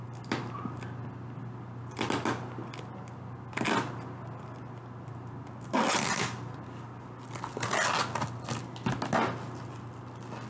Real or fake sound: real